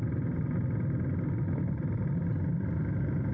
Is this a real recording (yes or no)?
yes